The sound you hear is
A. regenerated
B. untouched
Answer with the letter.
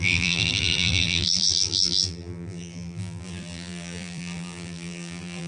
A